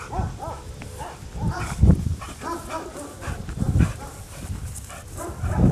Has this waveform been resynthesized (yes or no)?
yes